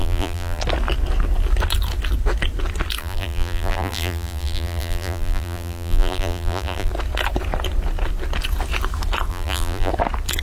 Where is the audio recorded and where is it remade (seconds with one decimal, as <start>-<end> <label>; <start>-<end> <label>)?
0.0-0.6 remade; 0.6-3.0 recorded; 3.0-6.9 remade; 6.9-9.3 recorded; 9.3-9.9 remade; 9.9-10.4 recorded